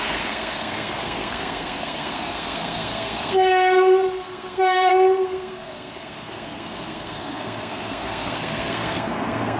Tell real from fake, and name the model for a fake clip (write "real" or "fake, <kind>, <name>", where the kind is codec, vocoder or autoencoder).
fake, codec, SNAC